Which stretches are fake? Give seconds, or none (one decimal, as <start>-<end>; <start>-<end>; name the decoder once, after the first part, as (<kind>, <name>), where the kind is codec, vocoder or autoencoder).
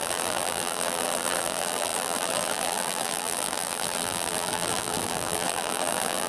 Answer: 0.0-6.3 (vocoder, BigVGAN v2)